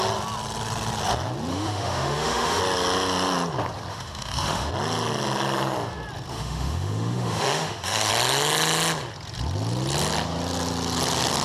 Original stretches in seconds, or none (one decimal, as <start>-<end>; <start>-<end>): 0.0-1.5; 2.6-3.9; 4.7-6.3; 8.1-11.4